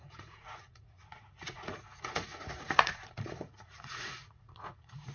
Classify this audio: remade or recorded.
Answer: remade